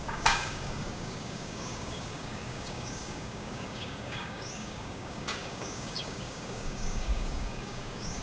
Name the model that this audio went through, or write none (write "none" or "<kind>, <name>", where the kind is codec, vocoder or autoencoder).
codec, DAC